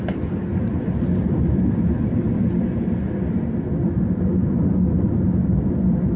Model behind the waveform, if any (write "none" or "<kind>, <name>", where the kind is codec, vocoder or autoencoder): none